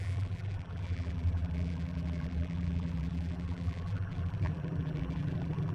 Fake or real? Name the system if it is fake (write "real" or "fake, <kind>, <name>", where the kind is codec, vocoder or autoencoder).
fake, vocoder, BigVGAN v2